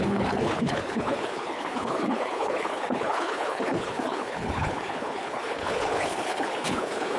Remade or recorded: remade